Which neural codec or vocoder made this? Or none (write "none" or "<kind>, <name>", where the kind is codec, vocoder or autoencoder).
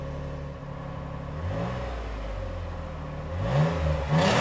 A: none